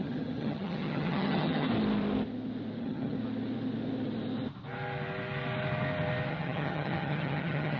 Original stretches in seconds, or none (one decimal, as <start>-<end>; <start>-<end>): 1.7-2.8; 3.2-6.3